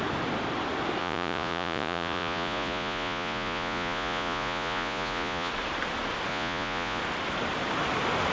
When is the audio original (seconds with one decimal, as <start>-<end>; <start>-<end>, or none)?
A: 0.0-1.0; 5.5-6.3; 7.0-8.3